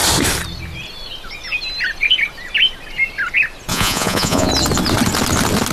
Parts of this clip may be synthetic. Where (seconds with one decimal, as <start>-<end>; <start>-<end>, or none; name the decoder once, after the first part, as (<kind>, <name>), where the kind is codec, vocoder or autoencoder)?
3.7-4.5 (vocoder, Vocos)